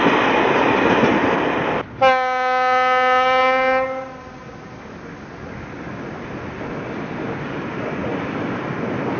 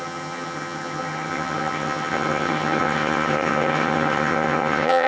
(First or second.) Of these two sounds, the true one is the first